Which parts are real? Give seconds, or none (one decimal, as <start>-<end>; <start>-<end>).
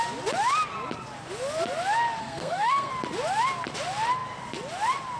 0.0-2.2; 2.9-5.2